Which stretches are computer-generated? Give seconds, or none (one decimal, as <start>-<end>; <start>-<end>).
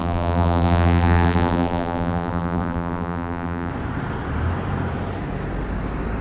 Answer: 0.0-3.7